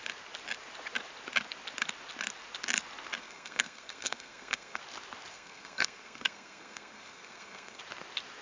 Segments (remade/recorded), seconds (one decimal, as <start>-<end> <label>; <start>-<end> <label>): 0.0-3.2 recorded; 3.2-4.8 remade; 4.8-5.3 recorded; 5.3-7.8 remade; 7.8-8.4 recorded

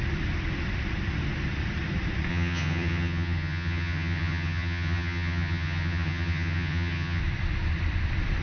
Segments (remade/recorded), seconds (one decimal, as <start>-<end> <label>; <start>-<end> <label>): 0.0-2.3 recorded; 2.3-7.2 remade; 7.2-8.4 recorded

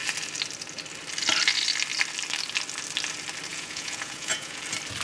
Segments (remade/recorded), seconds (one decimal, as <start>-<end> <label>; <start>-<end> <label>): 0.0-3.5 recorded; 3.5-4.6 remade; 4.6-5.0 recorded

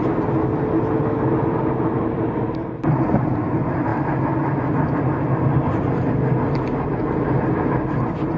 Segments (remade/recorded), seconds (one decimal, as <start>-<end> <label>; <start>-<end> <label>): 0.0-8.4 recorded

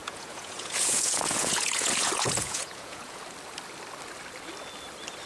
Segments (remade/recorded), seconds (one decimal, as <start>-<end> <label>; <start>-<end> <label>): 0.0-3.2 remade; 3.2-5.3 recorded

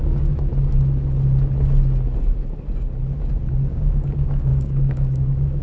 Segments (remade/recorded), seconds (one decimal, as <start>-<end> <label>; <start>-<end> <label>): 0.0-0.5 remade; 0.5-3.7 recorded; 3.7-5.6 remade

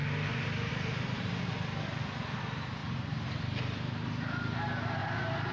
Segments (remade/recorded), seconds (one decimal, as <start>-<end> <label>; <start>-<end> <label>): 0.0-0.7 remade; 0.7-5.0 recorded; 5.0-5.5 remade